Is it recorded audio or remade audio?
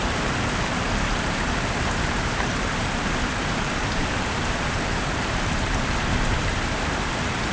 remade